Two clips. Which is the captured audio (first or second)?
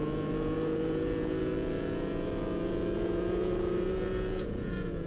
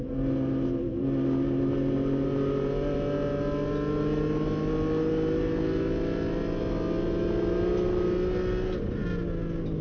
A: second